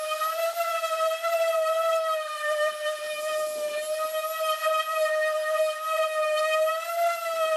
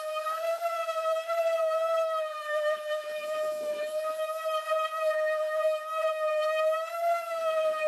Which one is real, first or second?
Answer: first